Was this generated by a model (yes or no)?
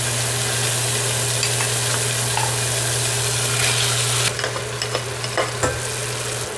no